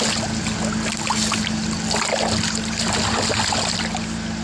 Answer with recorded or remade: recorded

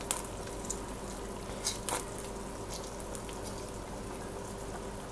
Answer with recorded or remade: recorded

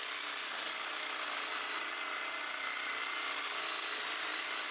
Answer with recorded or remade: recorded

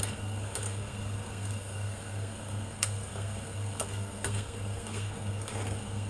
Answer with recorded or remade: remade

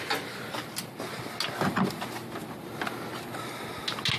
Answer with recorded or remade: recorded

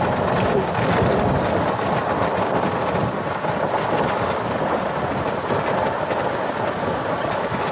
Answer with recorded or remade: recorded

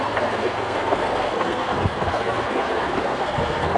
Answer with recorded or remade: remade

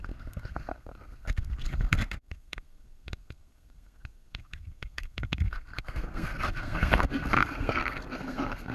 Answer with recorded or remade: remade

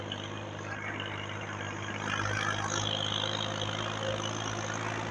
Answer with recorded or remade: recorded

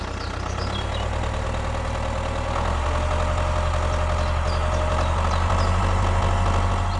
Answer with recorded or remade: recorded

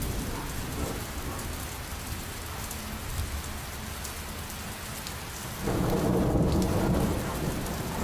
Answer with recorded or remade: recorded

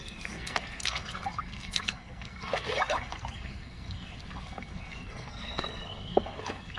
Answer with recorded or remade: remade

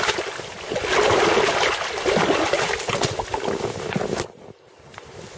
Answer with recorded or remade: recorded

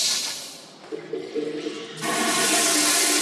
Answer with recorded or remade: recorded